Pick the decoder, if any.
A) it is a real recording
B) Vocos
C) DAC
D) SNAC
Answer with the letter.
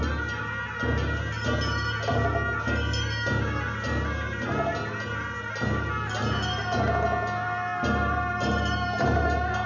A